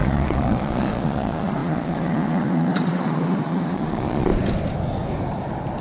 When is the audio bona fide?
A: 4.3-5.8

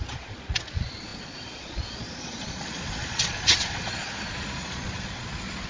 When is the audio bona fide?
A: none

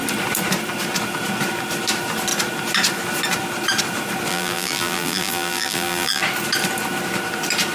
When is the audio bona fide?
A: 0.0-4.3; 6.2-7.7

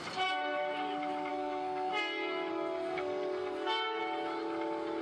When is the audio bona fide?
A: 0.0-1.3; 1.9-2.5; 4.0-5.0

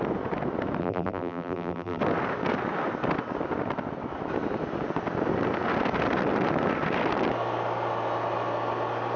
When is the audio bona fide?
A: 0.0-0.8; 2.0-9.2

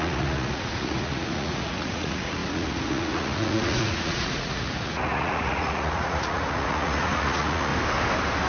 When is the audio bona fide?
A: 7.7-8.5